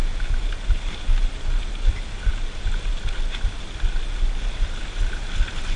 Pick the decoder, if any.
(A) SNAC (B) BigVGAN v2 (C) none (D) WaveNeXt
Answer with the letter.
C